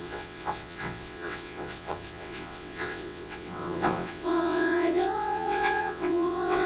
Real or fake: fake